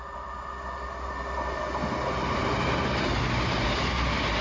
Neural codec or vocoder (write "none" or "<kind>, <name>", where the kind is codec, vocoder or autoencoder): none